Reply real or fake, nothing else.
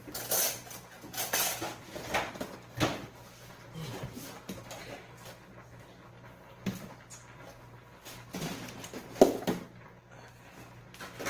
real